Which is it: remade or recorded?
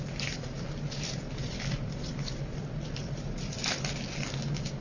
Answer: recorded